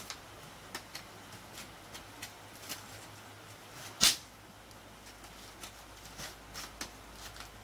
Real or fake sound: real